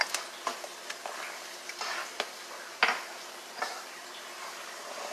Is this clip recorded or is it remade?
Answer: recorded